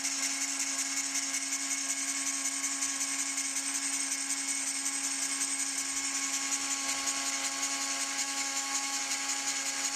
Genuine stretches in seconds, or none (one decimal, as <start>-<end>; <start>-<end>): 0.0-8.2; 9.0-10.0

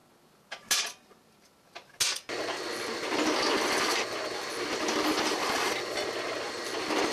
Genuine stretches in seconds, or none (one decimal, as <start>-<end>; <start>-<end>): 0.0-7.1

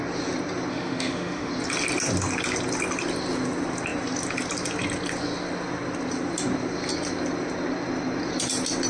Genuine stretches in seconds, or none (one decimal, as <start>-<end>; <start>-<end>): 0.0-0.7; 1.5-8.9

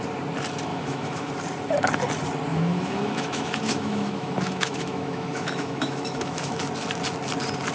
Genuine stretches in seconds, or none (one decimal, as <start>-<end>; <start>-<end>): 0.0-0.7; 1.3-2.5; 6.6-7.7